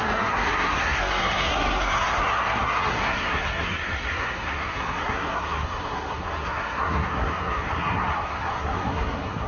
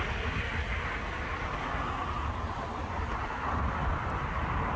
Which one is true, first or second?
second